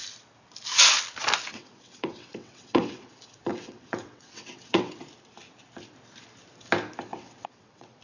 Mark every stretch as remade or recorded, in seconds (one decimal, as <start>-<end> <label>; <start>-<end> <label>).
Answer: 0.0-1.5 recorded; 1.5-3.1 remade; 3.1-3.5 recorded; 3.5-4.9 remade; 4.9-7.1 recorded; 7.1-8.0 remade